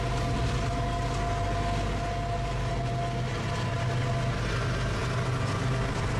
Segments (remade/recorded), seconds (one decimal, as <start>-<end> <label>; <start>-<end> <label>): 0.0-6.2 recorded